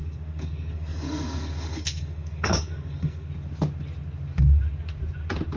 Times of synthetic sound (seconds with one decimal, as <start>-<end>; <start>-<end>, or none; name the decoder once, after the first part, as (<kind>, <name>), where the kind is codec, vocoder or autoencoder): 0.0-3.3 (codec, SNAC)